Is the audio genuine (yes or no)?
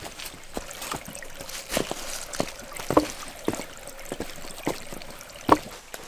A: yes